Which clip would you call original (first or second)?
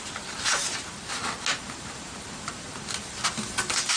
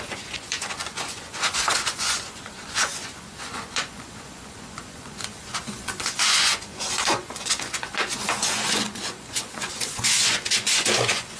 first